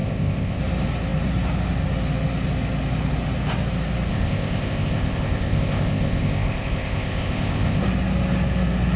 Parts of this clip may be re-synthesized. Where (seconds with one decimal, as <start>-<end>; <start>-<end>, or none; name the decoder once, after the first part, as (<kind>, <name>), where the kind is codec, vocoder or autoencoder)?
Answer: 0.0-0.6 (codec, ZipCodec); 4.1-7.8